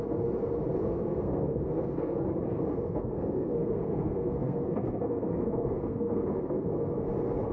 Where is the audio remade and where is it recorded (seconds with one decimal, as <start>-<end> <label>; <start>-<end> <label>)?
0.0-0.8 recorded; 0.8-2.2 remade; 2.2-2.7 recorded; 2.7-7.1 remade; 7.1-7.5 recorded